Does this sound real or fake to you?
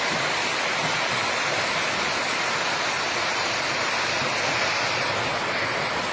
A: real